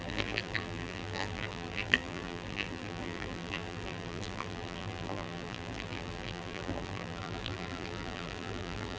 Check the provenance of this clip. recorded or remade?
remade